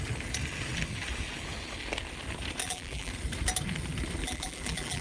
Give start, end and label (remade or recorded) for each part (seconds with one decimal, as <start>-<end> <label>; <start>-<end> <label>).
0.0-2.6 recorded; 2.6-3.1 remade; 3.1-4.2 recorded; 4.2-5.0 remade